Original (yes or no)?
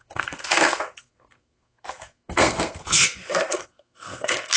no